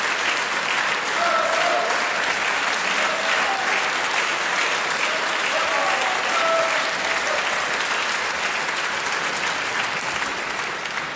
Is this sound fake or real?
real